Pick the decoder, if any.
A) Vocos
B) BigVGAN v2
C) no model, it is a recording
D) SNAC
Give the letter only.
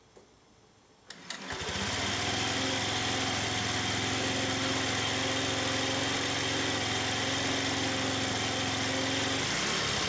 C